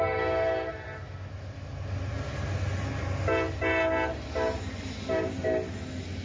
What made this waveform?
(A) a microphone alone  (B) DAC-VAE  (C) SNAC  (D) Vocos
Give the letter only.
A